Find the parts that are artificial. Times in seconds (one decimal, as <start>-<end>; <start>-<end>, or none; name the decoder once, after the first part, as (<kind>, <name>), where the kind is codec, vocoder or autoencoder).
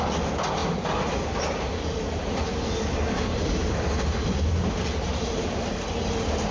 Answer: none